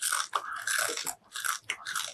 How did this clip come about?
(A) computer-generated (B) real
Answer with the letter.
B